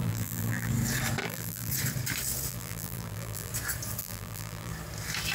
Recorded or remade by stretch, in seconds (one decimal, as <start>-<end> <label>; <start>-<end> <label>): 0.0-0.7 remade; 0.7-1.2 recorded; 1.2-1.7 remade; 1.7-2.5 recorded; 2.5-3.5 remade; 3.5-4.0 recorded; 4.0-4.7 remade; 4.7-5.3 recorded